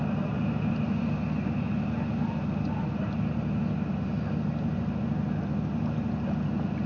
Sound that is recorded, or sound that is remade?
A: recorded